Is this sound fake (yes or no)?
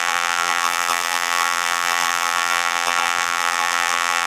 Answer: yes